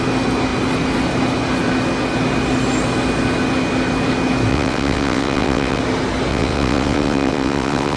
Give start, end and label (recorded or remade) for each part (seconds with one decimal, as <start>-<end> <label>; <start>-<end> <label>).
0.0-4.5 recorded; 4.5-5.8 remade; 5.8-6.3 recorded; 6.3-8.0 remade